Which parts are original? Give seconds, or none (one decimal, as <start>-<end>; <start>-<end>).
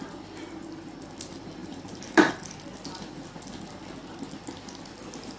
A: 0.0-1.6; 2.3-5.4